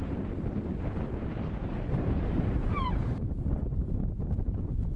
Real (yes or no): no